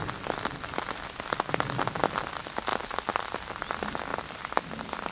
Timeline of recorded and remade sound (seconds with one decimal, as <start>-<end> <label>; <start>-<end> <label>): 0.0-5.1 recorded